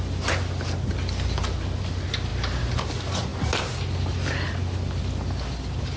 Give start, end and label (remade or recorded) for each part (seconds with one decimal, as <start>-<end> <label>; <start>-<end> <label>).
0.0-6.0 recorded